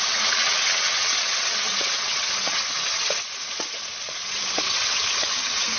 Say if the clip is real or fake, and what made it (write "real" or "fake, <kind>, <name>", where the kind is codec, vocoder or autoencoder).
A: fake, vocoder, WaveNeXt